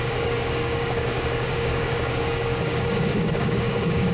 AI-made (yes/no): yes